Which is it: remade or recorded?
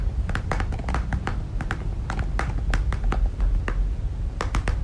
recorded